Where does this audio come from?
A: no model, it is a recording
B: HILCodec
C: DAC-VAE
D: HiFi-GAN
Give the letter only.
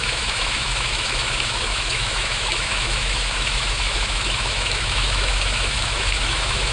C